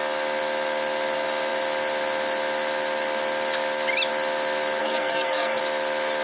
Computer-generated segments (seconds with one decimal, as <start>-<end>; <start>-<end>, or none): 4.8-5.6